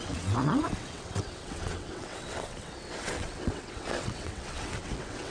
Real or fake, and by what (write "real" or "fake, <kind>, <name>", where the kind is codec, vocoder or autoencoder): fake, vocoder, WaveNeXt